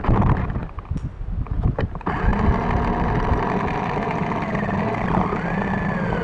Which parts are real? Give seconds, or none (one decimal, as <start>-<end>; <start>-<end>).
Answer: 0.0-6.2